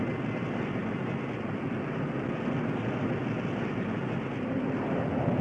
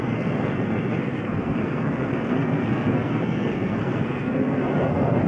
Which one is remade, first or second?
second